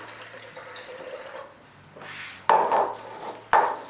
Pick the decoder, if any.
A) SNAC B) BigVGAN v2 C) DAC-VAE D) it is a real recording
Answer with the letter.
D